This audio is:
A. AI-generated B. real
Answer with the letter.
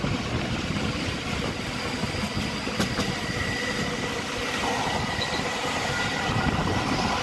B